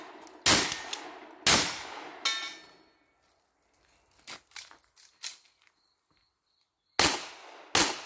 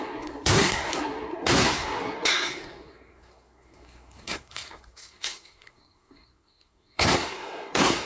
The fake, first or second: second